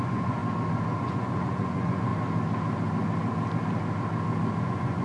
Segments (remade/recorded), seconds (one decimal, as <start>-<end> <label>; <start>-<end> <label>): 0.0-0.4 remade; 0.4-1.0 recorded; 1.0-2.1 remade; 2.1-4.6 recorded; 4.6-5.0 remade